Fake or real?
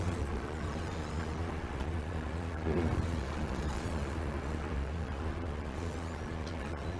fake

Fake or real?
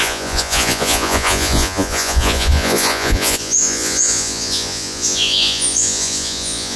fake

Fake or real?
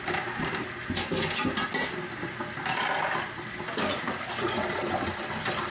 real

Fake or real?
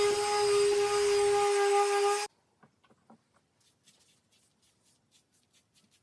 real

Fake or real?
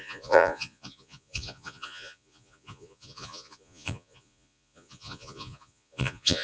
fake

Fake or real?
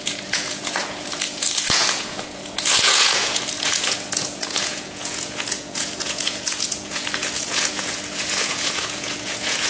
fake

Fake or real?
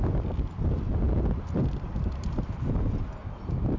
real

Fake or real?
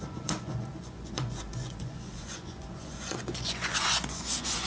fake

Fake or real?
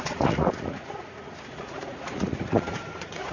fake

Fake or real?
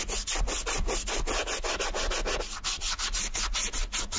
real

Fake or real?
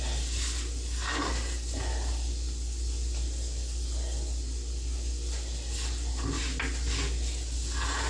real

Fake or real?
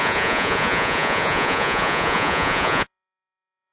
fake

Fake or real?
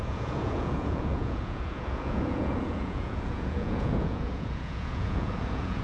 fake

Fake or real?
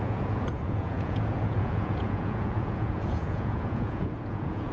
fake